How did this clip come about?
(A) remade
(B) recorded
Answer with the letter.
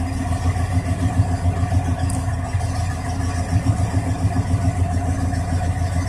B